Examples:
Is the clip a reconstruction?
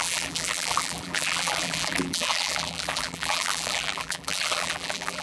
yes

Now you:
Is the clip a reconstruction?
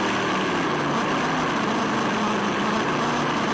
no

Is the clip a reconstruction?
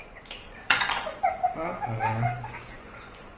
yes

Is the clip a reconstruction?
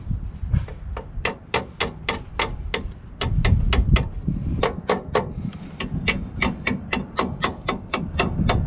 no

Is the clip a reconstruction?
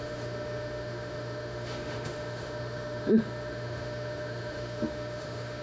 yes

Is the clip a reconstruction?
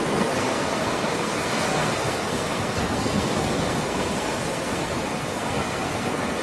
yes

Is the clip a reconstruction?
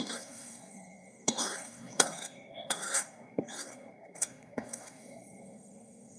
yes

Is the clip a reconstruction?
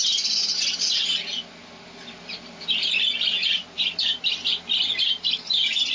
no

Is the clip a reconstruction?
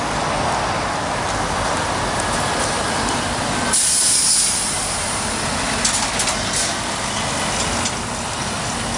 no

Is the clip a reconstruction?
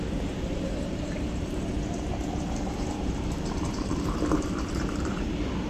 yes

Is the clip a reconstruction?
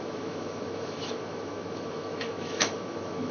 yes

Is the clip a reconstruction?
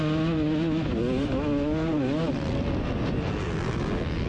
no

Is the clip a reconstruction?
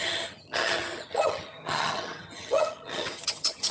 yes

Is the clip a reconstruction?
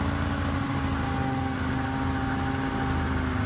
no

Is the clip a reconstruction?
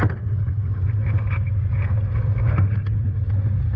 no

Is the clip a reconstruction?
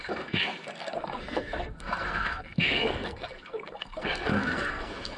yes